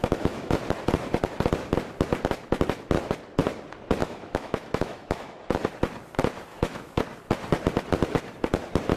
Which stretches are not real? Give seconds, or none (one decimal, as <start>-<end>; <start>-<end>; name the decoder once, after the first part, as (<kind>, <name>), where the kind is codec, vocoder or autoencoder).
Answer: 0.0-0.6 (autoencoder, DAC-VAE); 4.0-5.6; 6.5-7.0